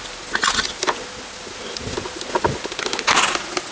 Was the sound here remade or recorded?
recorded